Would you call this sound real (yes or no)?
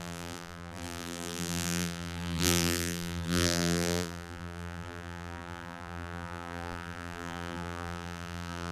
no